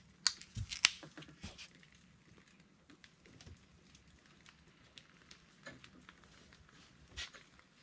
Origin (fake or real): real